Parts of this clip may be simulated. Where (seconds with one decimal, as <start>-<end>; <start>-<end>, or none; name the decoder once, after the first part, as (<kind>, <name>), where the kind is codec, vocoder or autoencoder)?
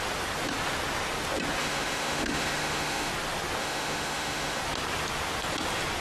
1.6-3.1 (autoencoder, DAC-VAE); 3.6-4.6